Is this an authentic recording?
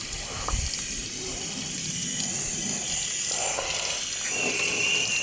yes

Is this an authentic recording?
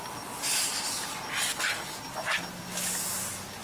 yes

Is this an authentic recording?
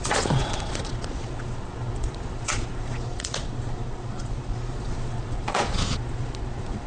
no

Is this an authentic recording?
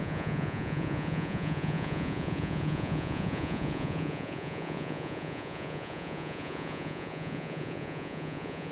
no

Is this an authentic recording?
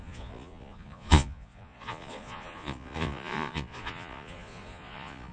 no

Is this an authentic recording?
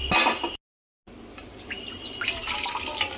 yes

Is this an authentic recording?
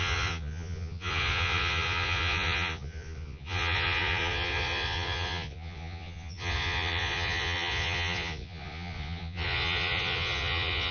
no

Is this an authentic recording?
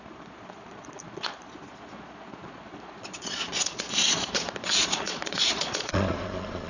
no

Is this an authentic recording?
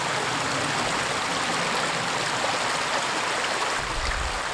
yes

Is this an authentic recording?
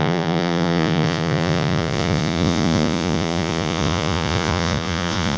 no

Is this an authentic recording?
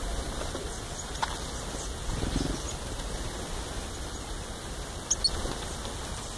yes